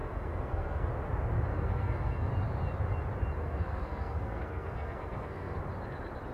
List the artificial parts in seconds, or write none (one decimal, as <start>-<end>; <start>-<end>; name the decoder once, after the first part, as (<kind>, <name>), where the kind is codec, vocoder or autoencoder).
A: 0.0-0.9 (codec, SNAC); 1.5-2.3; 3.4-5.6